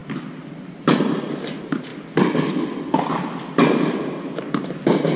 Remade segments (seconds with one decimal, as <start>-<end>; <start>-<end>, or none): 0.7-1.9; 4.5-5.2